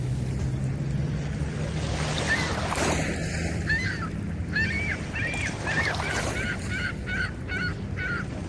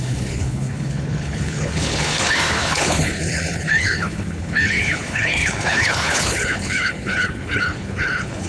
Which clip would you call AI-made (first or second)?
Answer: second